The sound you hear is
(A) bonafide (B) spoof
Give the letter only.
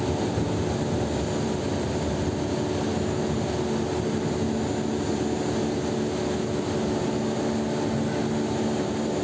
A